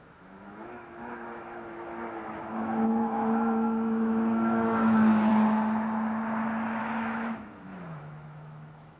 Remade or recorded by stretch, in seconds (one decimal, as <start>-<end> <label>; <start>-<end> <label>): 0.0-5.3 remade; 5.3-6.8 recorded; 6.8-9.0 remade